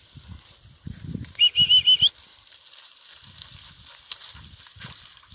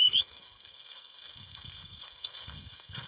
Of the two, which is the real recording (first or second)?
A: first